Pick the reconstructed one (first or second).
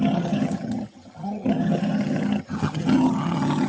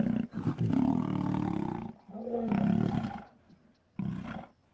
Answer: first